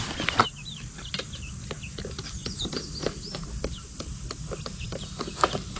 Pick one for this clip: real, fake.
real